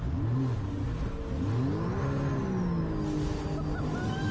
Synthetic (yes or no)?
no